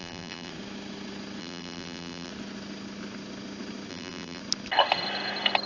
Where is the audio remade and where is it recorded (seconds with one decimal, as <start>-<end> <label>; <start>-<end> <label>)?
0.0-0.5 remade; 0.5-1.4 recorded; 1.4-2.3 remade; 2.3-3.9 recorded; 3.9-4.4 remade; 4.4-5.7 recorded